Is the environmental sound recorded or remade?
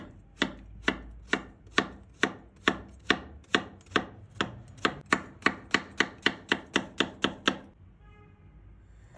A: recorded